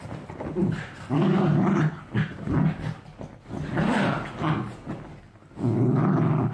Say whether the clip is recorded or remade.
recorded